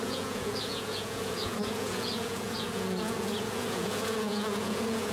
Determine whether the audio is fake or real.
fake